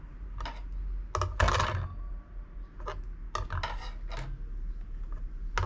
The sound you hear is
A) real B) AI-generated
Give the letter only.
A